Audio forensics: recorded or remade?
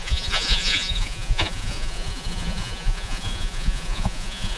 remade